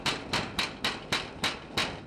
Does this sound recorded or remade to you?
recorded